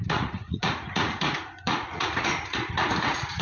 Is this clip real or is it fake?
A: fake